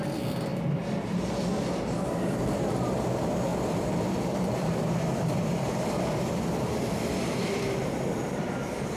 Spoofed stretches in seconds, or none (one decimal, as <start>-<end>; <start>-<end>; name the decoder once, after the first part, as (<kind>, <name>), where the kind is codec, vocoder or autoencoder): 3.5-9.0 (vocoder, BigVGAN v2)